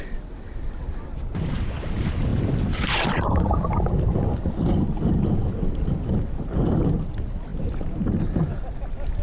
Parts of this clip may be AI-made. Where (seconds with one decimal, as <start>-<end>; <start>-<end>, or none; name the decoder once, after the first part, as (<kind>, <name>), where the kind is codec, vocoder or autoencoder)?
none